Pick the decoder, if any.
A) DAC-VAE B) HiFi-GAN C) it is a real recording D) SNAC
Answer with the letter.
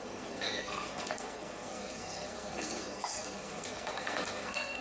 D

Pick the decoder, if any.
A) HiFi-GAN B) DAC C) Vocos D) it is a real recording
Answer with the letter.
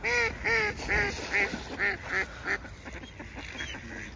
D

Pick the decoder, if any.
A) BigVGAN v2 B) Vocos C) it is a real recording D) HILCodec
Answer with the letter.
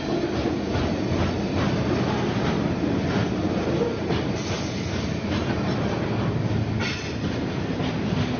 C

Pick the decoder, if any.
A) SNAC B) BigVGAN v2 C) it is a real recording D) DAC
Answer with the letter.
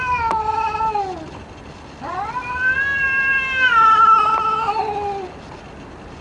C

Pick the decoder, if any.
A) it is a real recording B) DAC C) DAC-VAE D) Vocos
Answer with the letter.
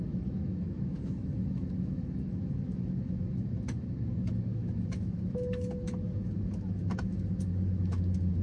C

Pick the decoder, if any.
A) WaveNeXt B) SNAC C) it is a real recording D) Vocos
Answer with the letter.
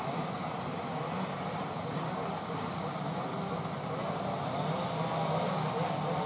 C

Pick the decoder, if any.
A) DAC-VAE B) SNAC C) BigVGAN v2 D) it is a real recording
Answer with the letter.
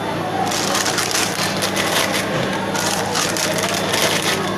D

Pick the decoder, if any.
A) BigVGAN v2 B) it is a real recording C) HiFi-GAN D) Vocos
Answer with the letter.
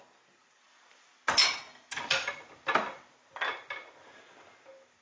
B